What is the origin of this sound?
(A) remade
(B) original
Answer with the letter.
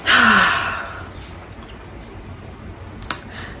B